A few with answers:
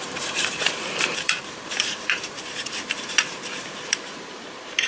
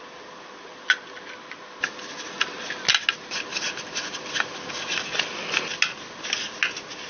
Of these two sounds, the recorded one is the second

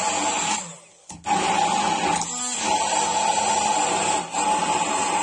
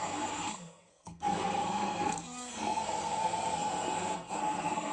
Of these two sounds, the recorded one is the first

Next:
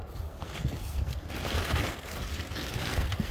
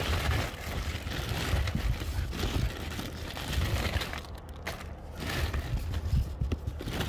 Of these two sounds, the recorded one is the second